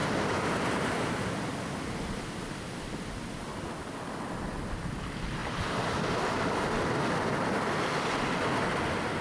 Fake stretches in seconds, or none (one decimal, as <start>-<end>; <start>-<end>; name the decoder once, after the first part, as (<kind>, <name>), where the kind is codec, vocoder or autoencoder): none